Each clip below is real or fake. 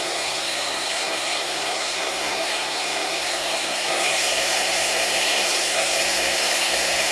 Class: fake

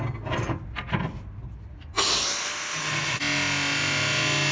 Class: real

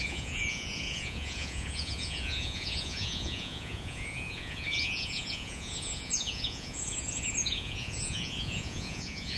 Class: fake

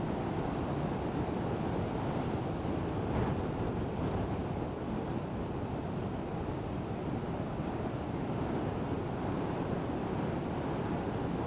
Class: real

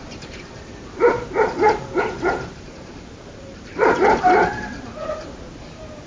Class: fake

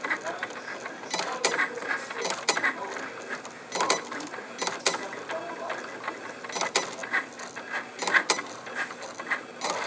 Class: real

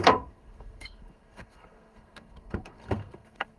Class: fake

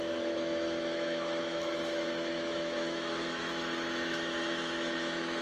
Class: fake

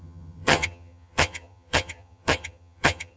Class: fake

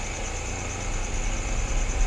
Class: real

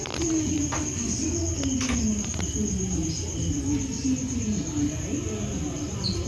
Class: real